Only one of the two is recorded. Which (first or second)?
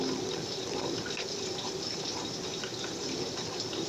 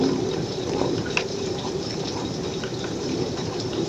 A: first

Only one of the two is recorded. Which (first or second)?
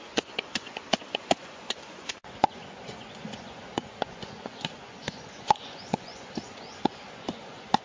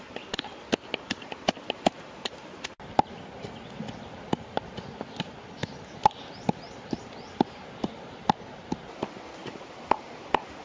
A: second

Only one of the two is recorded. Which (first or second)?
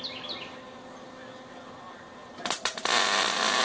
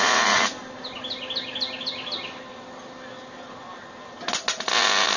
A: second